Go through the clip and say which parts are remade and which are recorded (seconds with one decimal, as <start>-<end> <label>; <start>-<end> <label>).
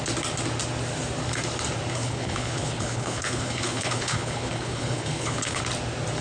0.0-1.9 recorded; 1.9-5.6 remade; 5.6-6.2 recorded